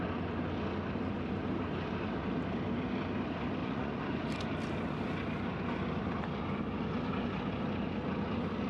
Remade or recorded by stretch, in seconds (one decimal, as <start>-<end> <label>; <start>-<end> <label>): 0.0-3.6 recorded; 3.6-4.2 remade; 4.2-8.7 recorded